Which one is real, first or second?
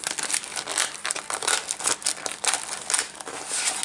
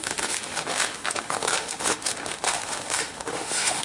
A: first